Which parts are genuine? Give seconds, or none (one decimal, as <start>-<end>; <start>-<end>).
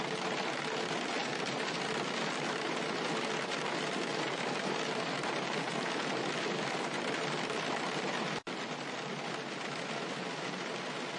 0.0-11.2